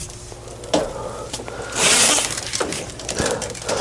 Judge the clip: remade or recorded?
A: recorded